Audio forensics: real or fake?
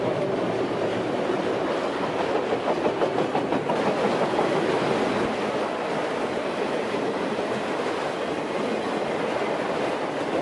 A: real